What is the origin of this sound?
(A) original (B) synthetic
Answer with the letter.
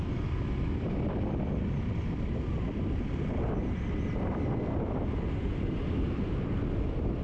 B